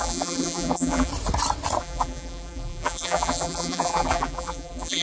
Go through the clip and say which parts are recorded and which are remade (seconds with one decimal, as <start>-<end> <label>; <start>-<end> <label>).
0.0-1.1 remade; 1.1-1.8 recorded; 1.8-5.0 remade